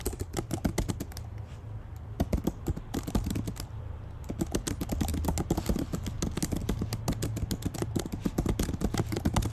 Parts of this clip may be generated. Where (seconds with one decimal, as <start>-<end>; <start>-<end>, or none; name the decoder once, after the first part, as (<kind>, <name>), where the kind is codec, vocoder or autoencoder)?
none